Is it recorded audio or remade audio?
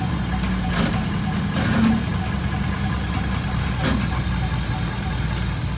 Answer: recorded